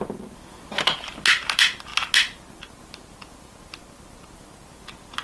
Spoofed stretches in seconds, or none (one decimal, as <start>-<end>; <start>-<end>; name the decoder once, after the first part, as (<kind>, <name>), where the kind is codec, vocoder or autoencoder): none